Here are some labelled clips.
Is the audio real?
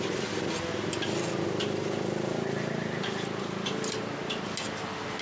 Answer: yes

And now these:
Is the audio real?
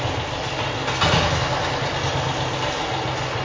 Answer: yes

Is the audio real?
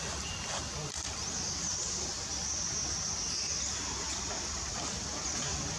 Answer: yes